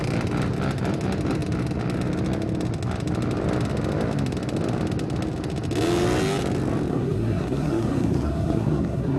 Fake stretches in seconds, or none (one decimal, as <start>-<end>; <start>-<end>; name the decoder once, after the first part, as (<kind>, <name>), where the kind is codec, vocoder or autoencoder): 6.9-9.2 (codec, SNAC)